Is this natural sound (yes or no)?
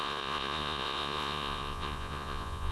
no